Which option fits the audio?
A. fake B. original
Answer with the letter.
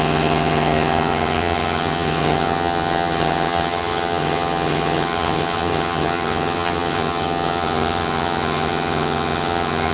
A